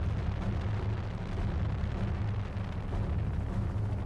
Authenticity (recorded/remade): recorded